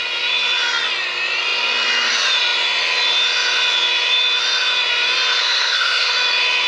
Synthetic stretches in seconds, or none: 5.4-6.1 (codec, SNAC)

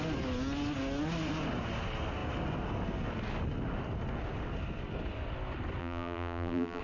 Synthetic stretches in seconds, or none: 5.8-6.8 (vocoder, BigVGAN v2)

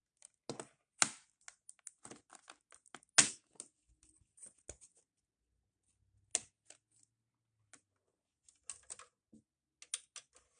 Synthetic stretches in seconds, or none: none

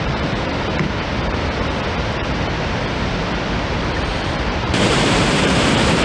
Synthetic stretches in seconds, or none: 0.0-0.5 (vocoder, BigVGAN v2); 4.1-6.0